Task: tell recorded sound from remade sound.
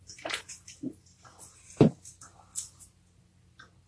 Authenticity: recorded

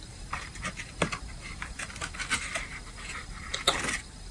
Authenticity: recorded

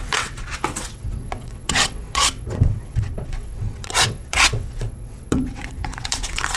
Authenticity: remade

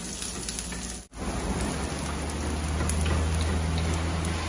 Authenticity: recorded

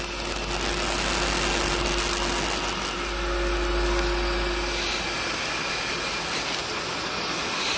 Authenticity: recorded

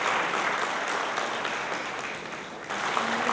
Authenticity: recorded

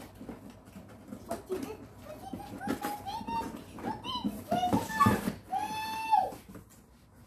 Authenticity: recorded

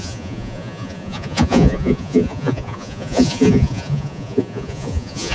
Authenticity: remade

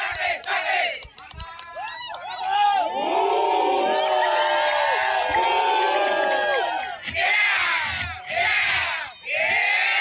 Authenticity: recorded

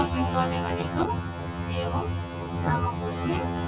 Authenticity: remade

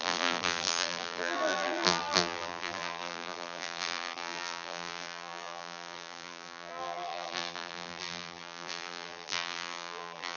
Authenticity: remade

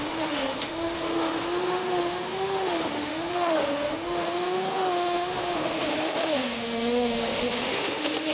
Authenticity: remade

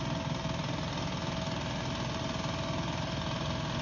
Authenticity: recorded